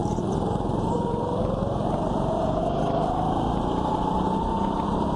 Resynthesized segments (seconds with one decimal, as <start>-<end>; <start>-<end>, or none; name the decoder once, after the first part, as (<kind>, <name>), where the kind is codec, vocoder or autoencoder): 0.0-2.4 (vocoder, BigVGAN v2)